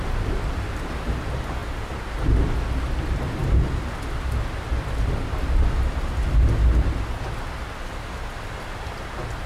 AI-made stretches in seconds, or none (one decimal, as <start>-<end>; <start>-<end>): 1.6-2.1